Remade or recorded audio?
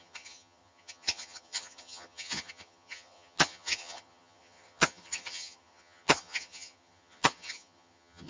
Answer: remade